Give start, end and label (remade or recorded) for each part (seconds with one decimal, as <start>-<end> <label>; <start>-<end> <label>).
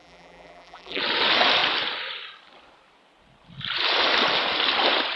0.0-1.0 remade; 1.0-5.2 recorded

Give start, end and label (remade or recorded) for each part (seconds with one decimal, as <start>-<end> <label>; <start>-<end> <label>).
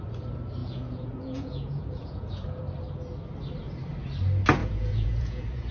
0.0-0.6 recorded; 0.6-2.6 remade; 2.6-4.6 recorded; 4.6-5.7 remade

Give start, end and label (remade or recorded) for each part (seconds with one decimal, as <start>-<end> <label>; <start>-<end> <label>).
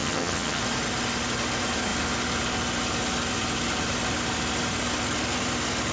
0.0-0.6 remade; 0.6-5.9 recorded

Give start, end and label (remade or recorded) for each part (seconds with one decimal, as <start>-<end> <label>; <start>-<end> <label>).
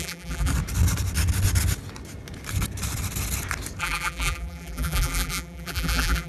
0.0-0.5 remade; 0.5-3.8 recorded; 3.8-6.3 remade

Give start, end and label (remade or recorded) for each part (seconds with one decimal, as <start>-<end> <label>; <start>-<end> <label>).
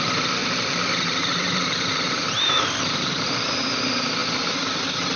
0.0-0.4 recorded; 0.4-3.5 remade; 3.5-5.2 recorded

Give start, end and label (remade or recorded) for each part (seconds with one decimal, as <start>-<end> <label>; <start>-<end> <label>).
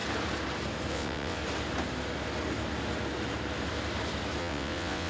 0.0-0.9 recorded; 0.9-1.4 remade; 1.4-4.4 recorded; 4.4-5.1 remade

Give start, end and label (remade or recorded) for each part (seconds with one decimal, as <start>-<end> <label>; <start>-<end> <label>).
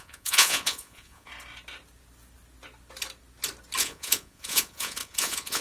0.0-1.3 remade; 1.3-3.8 recorded; 3.8-5.6 remade